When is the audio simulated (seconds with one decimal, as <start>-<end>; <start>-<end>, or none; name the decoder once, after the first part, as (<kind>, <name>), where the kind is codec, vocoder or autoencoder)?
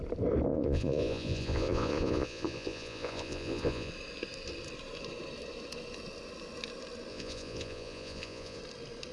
0.5-3.9 (vocoder, Vocos); 7.1-8.6